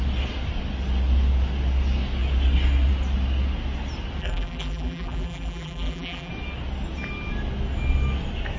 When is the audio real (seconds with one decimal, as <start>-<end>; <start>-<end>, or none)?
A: 0.0-4.2; 6.3-8.6